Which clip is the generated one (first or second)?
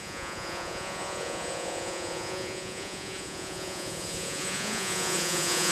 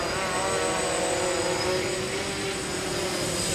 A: first